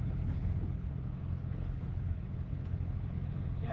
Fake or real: fake